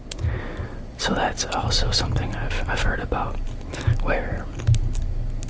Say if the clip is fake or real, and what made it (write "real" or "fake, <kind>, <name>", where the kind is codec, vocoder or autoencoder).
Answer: real